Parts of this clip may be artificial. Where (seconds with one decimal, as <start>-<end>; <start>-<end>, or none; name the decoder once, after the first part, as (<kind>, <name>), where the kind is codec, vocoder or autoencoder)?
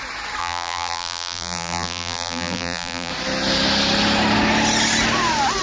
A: 0.4-3.1 (vocoder, BigVGAN v2)